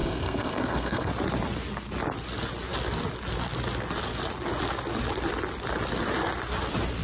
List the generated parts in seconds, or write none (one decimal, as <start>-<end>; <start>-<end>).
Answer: 0.0-1.1